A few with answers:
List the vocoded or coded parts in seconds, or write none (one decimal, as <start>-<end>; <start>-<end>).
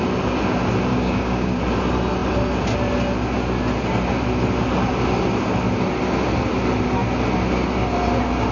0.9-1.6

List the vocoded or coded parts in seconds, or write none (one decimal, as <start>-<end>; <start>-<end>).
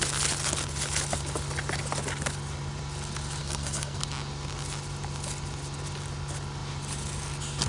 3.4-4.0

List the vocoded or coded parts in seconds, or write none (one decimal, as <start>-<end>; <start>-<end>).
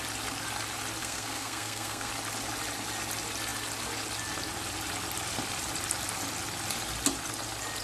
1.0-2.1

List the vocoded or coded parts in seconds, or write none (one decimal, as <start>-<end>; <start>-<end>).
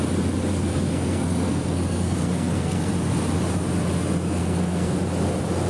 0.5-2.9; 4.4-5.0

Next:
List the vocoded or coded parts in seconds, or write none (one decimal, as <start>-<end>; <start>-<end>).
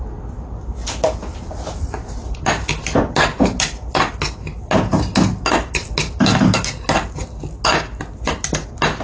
0.8-2.7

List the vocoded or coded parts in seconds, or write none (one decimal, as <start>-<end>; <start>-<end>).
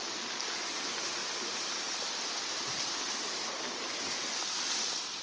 0.0-0.6; 1.2-4.3